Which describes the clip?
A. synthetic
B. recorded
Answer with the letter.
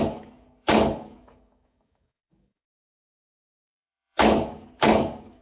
A